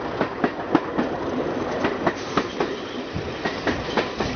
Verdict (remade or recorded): recorded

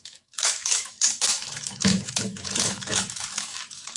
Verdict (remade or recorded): remade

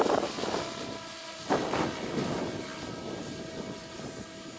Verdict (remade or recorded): recorded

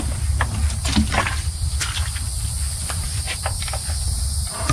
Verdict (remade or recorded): recorded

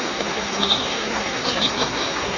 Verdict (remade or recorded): remade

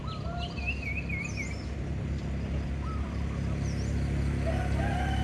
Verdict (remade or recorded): recorded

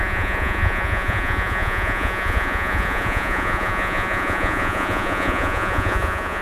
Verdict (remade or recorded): remade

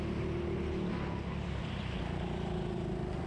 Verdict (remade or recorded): recorded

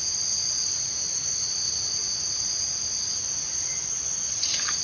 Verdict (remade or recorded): recorded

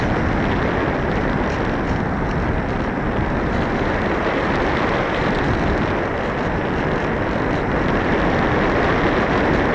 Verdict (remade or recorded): recorded